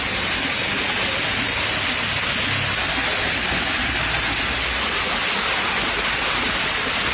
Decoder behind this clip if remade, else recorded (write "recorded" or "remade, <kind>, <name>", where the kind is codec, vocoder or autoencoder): recorded